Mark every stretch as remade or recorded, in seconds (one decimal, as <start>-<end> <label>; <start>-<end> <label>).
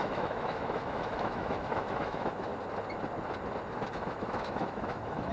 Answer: 0.0-2.5 remade; 2.5-3.9 recorded; 3.9-5.3 remade